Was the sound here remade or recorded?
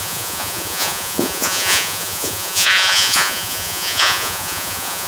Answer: remade